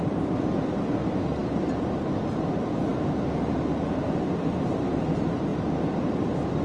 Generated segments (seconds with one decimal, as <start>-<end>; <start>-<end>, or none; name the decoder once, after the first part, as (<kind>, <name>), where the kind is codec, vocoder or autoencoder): none